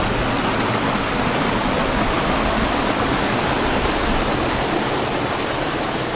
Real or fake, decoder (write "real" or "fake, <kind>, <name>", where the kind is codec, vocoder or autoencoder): real